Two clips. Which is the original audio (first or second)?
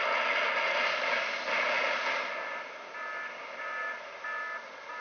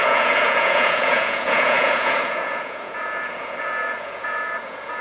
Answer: first